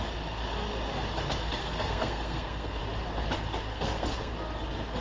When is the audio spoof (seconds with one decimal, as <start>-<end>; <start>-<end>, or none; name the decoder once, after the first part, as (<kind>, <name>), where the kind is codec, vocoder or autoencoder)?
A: 1.6-2.8 (codec, SNAC); 3.7-4.3